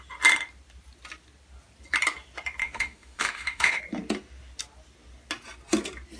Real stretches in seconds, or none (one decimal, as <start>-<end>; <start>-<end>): 0.0-2.6; 3.8-6.2